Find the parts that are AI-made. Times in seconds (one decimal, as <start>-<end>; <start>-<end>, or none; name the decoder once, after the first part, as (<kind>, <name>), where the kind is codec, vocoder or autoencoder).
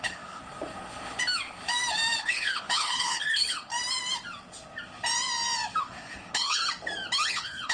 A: 0.0-0.4 (codec, HILCodec); 2.2-3.7; 5.8-6.6; 7.3-7.7